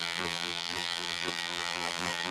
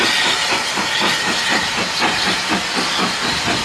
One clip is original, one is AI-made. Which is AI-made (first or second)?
first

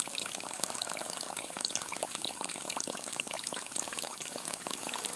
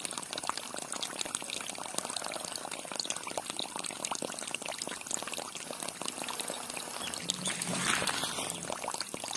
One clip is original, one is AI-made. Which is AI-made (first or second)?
first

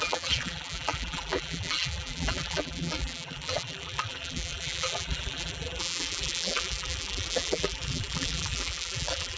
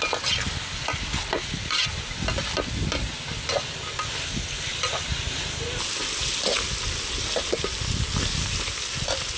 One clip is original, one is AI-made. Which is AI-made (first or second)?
first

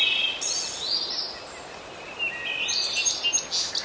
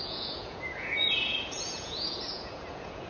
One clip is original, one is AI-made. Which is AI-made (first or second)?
second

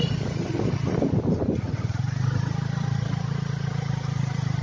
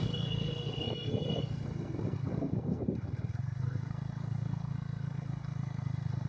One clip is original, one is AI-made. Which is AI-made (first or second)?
second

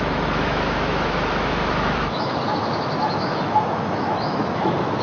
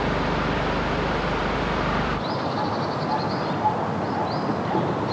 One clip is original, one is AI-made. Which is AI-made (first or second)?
first